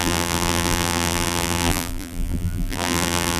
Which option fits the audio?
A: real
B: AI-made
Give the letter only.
B